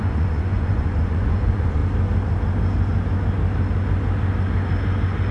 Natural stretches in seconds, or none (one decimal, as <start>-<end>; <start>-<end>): 1.8-5.3